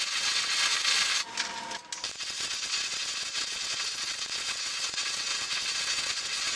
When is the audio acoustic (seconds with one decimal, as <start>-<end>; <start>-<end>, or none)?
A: 0.7-2.1